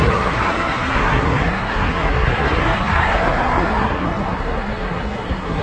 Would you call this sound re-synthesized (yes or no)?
yes